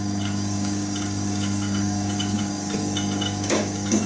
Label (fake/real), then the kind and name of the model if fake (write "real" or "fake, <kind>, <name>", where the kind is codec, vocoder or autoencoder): fake, codec, DAC